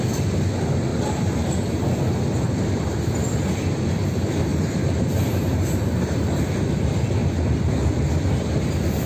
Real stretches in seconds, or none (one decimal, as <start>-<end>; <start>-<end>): 0.0-0.9; 1.5-4.5; 6.4-9.1